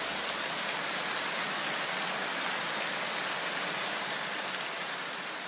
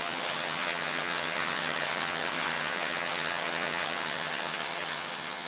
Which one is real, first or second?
first